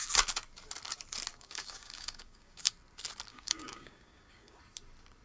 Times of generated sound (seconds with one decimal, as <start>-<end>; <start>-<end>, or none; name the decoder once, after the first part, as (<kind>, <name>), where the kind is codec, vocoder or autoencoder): 1.3-2.7 (codec, DAC); 3.3-4.6